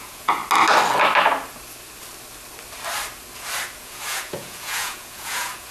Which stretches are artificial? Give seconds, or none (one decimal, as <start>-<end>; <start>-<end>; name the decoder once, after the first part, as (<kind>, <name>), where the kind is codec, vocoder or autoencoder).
0.0-0.4 (vocoder, Vocos); 3.8-5.7